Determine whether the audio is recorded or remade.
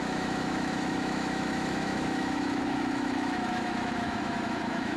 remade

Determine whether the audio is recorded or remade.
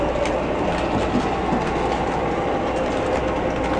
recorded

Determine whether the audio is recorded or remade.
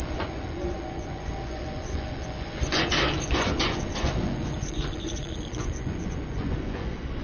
remade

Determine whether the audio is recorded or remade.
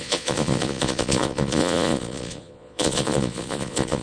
remade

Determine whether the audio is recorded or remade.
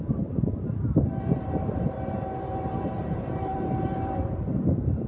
remade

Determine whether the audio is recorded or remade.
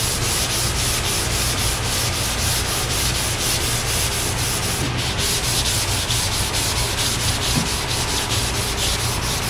recorded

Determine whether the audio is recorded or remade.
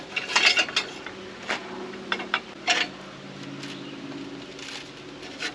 recorded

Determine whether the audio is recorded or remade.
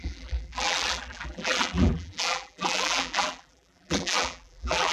remade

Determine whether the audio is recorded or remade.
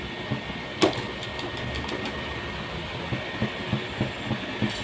recorded